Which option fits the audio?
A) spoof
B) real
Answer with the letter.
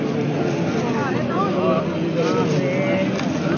B